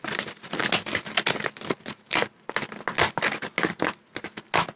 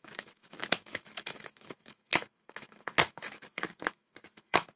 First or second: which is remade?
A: second